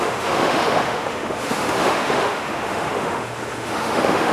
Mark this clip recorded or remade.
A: remade